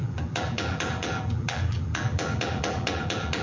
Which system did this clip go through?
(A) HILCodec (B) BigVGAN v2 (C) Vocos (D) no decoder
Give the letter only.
B